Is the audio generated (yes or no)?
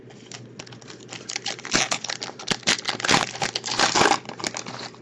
no